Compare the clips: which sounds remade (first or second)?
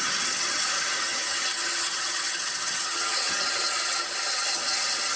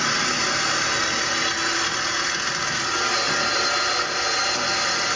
first